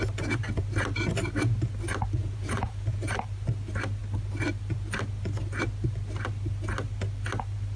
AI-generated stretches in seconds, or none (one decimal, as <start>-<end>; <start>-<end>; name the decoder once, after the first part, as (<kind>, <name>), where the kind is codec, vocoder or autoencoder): 2.2-3.0 (vocoder, Vocos)

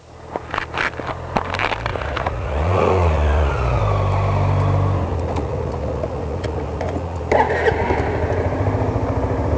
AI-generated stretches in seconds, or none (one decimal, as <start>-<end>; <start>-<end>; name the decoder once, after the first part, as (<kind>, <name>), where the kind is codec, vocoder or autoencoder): 1.9-3.8 (vocoder, Vocos); 5.1-7.2

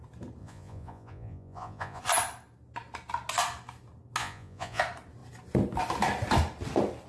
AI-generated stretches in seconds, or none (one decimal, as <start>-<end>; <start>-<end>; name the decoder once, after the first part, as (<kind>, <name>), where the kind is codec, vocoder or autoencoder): 0.4-2.0 (vocoder, Vocos); 4.2-4.8

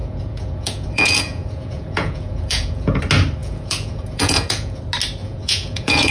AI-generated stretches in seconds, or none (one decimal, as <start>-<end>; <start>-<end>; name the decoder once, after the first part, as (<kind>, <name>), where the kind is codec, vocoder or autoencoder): 0.0-3.0 (vocoder, Vocos); 3.4-4.8; 5.2-6.1

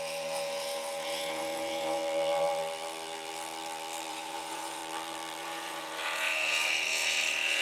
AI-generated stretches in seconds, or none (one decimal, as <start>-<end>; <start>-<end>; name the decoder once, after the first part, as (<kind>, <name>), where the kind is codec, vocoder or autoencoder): 0.0-2.0 (vocoder, Vocos); 4.1-4.8; 5.4-7.6